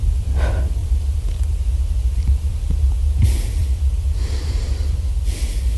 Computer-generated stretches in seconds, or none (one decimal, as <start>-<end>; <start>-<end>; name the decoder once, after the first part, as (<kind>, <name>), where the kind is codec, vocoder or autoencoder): 0.8-2.7 (vocoder, BigVGAN v2); 3.6-5.2